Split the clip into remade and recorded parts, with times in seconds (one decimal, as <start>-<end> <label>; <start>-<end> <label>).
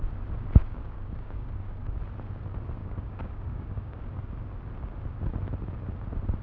0.0-0.6 recorded; 0.6-2.0 remade; 2.0-2.8 recorded; 2.8-4.0 remade; 4.0-6.4 recorded